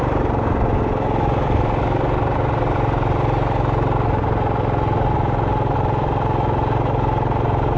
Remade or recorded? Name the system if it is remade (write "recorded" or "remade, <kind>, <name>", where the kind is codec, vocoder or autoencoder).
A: recorded